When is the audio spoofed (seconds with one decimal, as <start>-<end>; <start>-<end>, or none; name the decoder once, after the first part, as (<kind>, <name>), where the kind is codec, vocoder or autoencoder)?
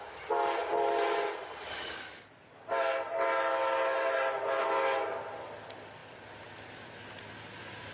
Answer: none